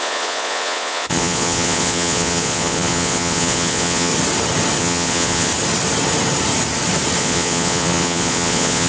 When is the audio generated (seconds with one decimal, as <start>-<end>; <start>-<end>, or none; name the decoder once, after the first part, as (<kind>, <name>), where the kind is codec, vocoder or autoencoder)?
0.0-4.1 (vocoder, Vocos); 4.8-5.5; 7.2-8.9